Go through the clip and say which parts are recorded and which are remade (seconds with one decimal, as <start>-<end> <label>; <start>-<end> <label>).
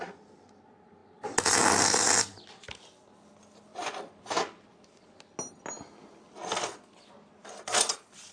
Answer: 0.0-8.3 recorded